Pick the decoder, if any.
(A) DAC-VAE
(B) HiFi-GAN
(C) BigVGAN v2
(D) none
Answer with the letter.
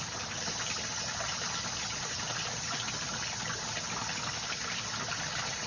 D